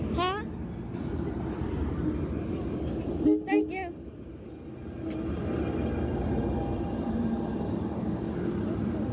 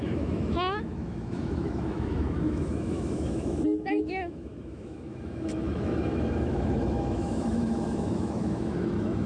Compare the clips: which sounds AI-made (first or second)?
second